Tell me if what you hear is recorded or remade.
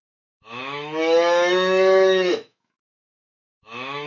remade